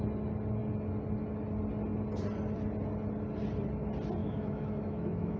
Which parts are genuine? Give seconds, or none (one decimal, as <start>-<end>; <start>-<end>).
0.0-4.2